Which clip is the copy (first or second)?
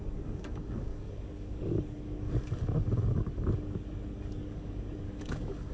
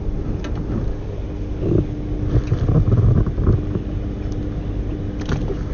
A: first